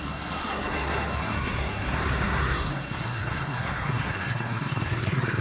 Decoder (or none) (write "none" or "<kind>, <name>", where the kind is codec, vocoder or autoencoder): codec, SNAC